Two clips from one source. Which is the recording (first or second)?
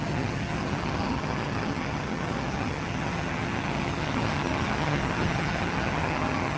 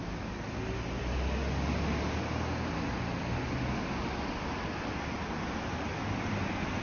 second